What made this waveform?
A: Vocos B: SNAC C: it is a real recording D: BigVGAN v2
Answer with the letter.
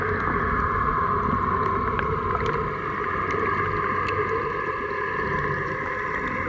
C